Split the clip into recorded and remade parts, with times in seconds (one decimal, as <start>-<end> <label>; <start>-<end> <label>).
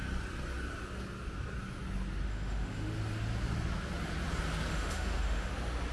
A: 0.0-2.3 recorded; 2.3-2.9 remade; 2.9-4.7 recorded; 4.7-5.5 remade; 5.5-5.9 recorded